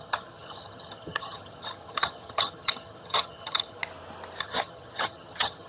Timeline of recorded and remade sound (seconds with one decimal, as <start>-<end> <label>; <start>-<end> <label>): 0.0-3.8 remade; 3.8-4.4 recorded; 4.4-5.7 remade